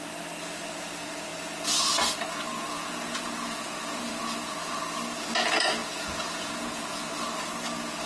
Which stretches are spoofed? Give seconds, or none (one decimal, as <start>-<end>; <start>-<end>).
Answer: 2.5-4.8; 5.8-7.0